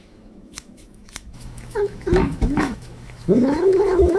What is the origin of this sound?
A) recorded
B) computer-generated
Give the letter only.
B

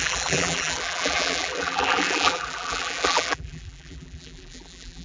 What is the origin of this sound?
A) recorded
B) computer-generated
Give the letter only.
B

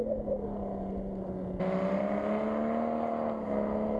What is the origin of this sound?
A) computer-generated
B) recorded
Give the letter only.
B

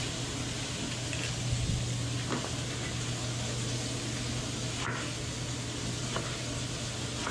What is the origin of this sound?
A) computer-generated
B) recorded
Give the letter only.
B